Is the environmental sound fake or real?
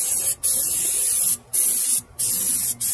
real